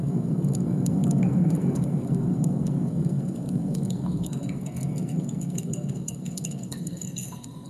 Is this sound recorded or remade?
remade